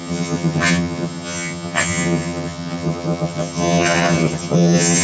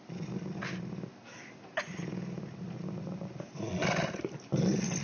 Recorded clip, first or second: second